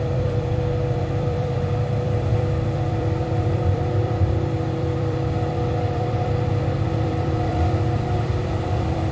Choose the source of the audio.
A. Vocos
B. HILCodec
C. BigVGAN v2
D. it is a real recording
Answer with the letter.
C